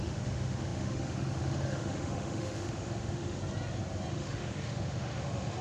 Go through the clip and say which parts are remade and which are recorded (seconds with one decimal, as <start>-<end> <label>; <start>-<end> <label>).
0.0-3.4 remade; 3.4-4.1 recorded; 4.1-5.6 remade